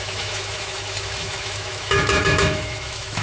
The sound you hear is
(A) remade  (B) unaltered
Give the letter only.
A